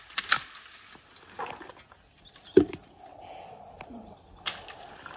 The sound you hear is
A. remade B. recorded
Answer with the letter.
B